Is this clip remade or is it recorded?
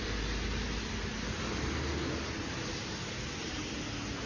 recorded